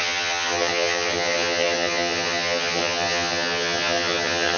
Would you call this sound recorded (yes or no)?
no